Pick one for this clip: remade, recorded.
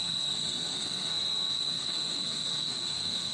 remade